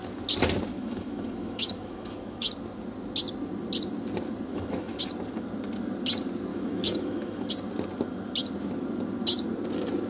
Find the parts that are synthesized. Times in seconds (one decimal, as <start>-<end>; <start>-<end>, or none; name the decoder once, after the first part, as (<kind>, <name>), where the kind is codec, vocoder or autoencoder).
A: 0.7-2.5 (autoencoder, DAC-VAE); 4.5-5.0; 6.5-7.5